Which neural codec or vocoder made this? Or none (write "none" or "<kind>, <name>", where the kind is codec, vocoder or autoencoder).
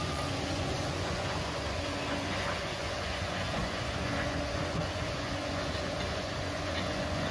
vocoder, Vocos